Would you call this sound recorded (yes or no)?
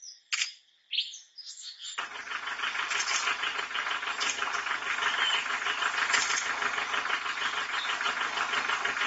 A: yes